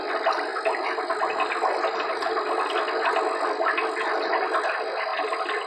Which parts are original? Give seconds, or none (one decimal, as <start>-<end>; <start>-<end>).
0.0-5.7